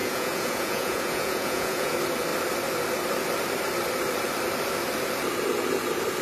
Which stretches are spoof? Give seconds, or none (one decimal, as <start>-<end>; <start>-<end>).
0.0-1.9